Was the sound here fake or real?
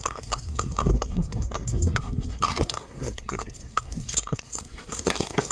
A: fake